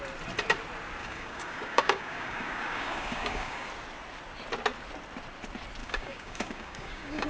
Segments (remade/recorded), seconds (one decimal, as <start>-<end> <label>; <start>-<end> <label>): 0.0-1.0 recorded; 1.0-3.7 remade; 3.7-5.8 recorded; 5.8-7.3 remade